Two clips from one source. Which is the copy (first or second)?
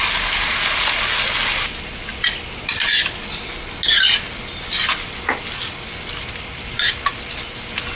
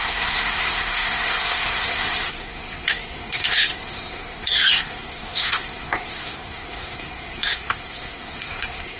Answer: second